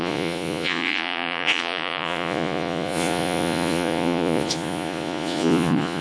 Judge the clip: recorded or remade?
remade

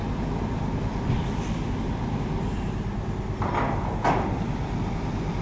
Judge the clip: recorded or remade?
recorded